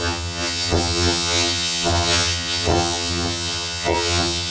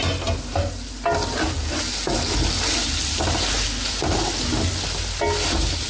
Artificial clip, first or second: first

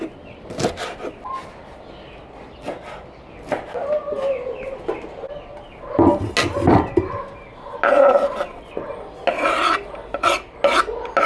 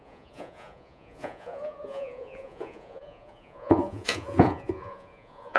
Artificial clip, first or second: second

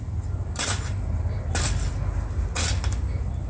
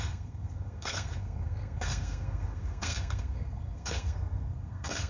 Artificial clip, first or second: second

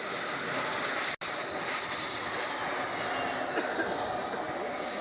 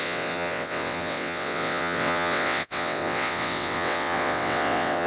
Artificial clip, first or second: second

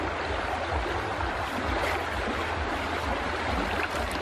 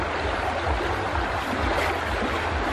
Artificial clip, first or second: first